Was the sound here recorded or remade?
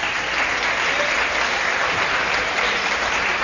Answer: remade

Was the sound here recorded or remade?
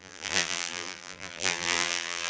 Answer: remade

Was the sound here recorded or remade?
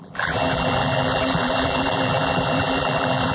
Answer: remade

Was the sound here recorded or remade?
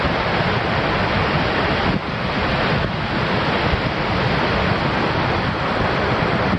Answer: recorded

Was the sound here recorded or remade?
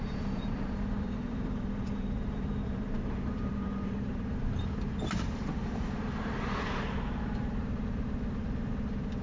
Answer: remade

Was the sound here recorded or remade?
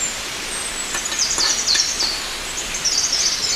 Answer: remade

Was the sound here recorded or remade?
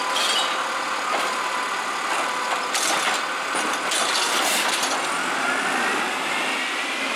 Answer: remade